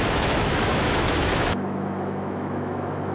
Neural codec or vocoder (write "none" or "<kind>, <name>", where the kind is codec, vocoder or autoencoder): autoencoder, DAC-VAE